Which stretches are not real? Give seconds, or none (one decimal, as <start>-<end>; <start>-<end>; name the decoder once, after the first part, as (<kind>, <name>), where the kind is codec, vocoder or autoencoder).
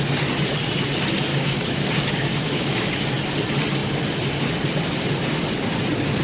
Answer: 1.3-3.0 (codec, DAC)